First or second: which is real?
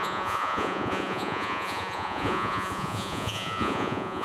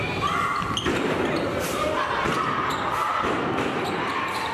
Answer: second